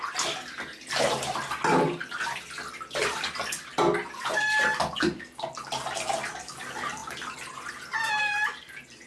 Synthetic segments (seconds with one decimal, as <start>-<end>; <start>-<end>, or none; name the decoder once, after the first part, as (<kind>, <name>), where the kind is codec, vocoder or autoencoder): none